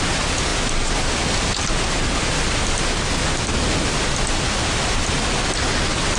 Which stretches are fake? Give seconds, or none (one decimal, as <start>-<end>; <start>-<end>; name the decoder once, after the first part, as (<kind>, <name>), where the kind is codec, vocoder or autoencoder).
none